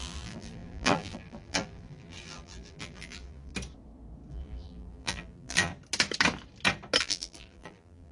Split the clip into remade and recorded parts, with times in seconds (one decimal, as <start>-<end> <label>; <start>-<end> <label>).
0.0-3.5 remade; 3.5-4.3 recorded; 4.3-5.7 remade; 5.7-7.0 recorded; 7.0-8.1 remade